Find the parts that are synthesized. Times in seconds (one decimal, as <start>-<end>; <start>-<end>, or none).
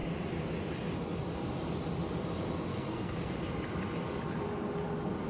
2.7-3.3